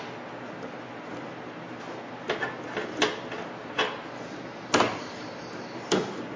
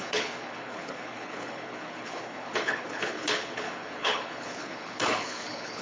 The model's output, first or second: second